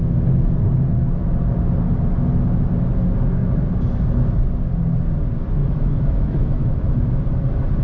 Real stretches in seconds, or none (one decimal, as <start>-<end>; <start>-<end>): 0.0-5.6; 7.1-7.8